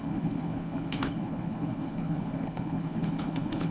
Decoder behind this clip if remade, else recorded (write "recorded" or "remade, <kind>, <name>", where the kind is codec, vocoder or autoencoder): remade, codec, HILCodec